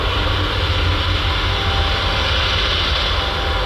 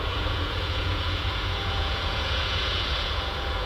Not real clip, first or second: second